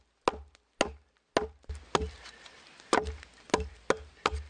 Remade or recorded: recorded